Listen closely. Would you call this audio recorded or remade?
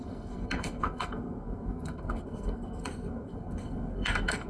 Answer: remade